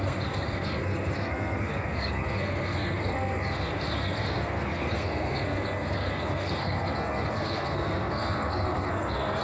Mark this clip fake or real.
fake